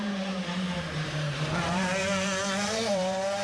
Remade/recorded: remade